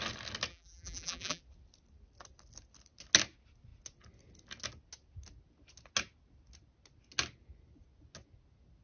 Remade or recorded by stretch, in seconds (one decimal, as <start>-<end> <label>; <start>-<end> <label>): 0.0-0.5 recorded; 0.5-1.4 remade; 1.4-8.8 recorded